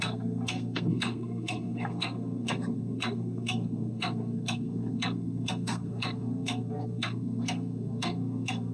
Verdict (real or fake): fake